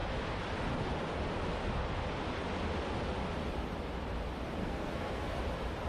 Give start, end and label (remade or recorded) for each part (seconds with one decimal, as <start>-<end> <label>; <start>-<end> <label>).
0.0-4.6 recorded; 4.6-5.4 remade; 5.4-5.9 recorded